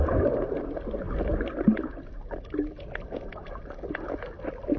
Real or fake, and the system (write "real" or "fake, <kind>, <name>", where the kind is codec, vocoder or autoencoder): real